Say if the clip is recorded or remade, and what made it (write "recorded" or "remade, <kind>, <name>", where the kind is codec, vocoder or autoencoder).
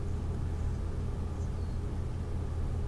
recorded